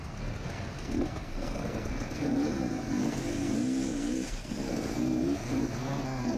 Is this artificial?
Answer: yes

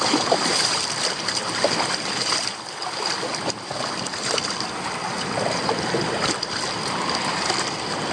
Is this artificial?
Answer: yes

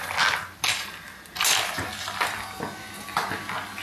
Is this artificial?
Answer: no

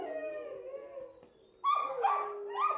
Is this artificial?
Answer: no